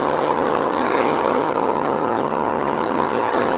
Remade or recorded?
remade